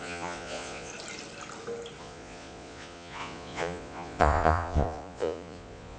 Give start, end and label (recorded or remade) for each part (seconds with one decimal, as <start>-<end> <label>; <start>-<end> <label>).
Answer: 0.0-0.9 remade; 0.9-2.0 recorded; 2.0-6.0 remade